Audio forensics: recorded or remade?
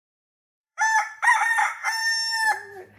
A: remade